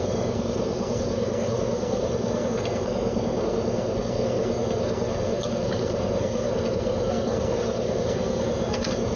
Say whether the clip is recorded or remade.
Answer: remade